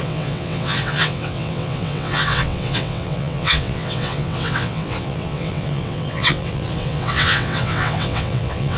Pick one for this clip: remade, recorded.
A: remade